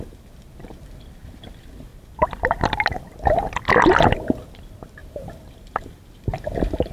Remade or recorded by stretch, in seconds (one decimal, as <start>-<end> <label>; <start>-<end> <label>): 0.0-1.9 recorded; 1.9-4.2 remade; 4.2-5.0 recorded; 5.0-6.9 remade